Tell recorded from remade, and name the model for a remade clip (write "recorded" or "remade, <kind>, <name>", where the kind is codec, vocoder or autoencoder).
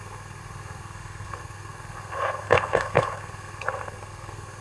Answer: remade, codec, SNAC